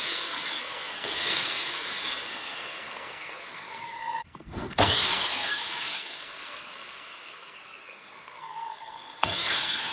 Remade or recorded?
remade